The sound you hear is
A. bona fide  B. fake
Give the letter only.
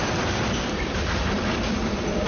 B